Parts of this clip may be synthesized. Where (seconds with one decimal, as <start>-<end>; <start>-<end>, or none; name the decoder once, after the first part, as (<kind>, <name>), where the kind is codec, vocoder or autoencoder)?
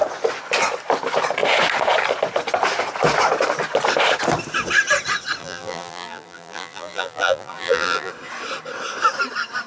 5.4-8.1 (vocoder, BigVGAN v2)